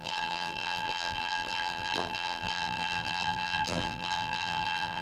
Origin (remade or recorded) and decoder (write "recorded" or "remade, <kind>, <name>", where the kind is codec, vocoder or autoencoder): remade, vocoder, BigVGAN v2